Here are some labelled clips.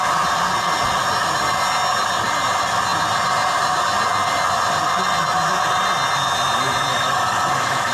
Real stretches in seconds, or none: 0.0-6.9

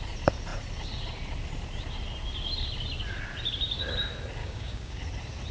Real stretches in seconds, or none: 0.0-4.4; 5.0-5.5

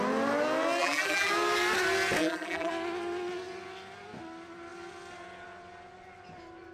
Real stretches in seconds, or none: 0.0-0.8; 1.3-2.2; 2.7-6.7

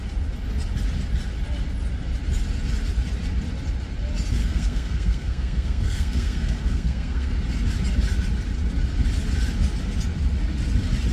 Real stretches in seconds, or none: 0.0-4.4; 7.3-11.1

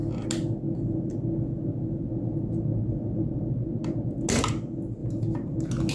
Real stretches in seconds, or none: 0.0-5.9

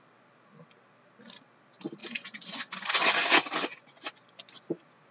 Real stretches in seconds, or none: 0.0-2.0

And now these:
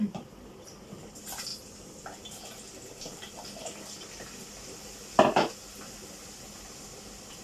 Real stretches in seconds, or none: 0.0-7.4

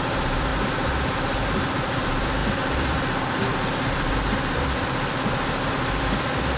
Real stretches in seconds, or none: 0.5-1.8